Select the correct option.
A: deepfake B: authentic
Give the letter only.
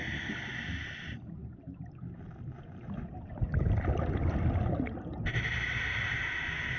B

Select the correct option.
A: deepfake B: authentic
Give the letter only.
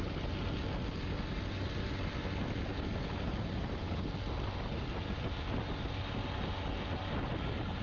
B